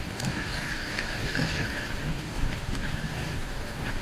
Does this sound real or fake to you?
fake